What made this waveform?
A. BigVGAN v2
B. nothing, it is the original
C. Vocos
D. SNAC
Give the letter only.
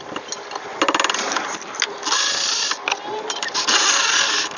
B